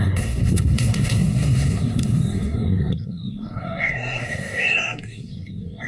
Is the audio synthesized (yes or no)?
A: yes